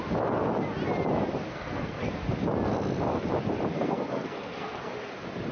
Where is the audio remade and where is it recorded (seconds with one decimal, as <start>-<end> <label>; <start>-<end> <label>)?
0.0-1.5 recorded; 1.5-2.0 remade; 2.0-3.7 recorded; 3.7-4.9 remade; 4.9-5.5 recorded